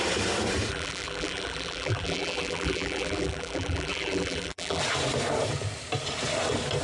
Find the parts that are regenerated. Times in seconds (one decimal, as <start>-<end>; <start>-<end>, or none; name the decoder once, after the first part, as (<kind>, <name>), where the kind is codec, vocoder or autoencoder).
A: 0.7-4.8 (vocoder, BigVGAN v2)